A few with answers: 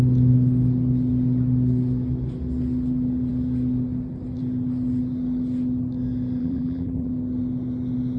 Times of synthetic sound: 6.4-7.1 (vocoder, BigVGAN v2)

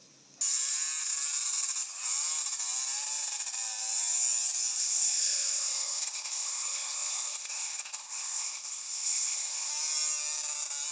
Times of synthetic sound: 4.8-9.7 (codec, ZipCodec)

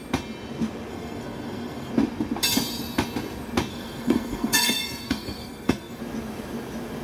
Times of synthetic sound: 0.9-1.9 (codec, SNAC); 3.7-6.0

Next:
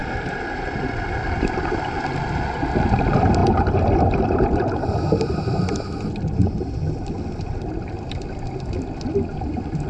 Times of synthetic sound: 0.0-0.9 (vocoder, BigVGAN v2)

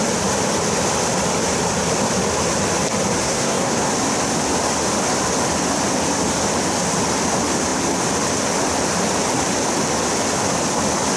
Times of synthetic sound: 3.2-3.9 (codec, SNAC)